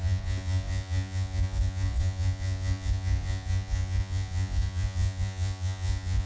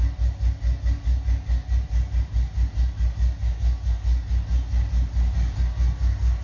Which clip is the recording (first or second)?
second